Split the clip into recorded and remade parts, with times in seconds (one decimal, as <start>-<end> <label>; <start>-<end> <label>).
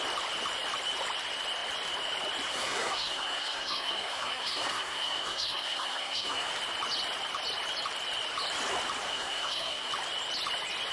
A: 0.0-2.5 recorded; 2.5-6.5 remade; 6.5-9.1 recorded; 9.1-9.9 remade; 9.9-10.9 recorded